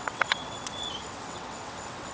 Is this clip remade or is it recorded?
remade